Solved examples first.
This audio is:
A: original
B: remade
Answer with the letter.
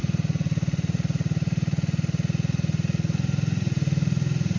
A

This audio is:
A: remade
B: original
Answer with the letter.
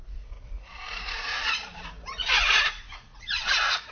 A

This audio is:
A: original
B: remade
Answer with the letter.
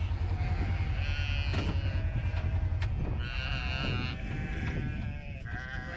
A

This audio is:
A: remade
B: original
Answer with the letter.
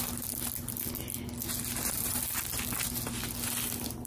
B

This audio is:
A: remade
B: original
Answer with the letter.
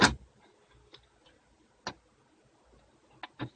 B